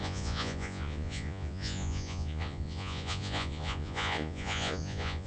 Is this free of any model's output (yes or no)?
no